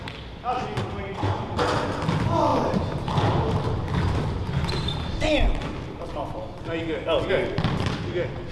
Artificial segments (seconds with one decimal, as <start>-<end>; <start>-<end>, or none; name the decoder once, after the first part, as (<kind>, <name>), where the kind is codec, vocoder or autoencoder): none